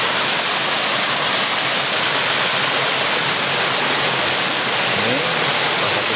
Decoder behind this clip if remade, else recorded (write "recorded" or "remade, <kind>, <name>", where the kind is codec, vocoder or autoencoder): recorded